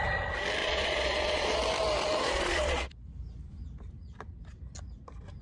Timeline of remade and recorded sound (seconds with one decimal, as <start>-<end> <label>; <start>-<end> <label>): 0.0-0.6 recorded; 0.6-1.6 remade; 1.6-2.2 recorded; 2.2-2.9 remade; 2.9-5.4 recorded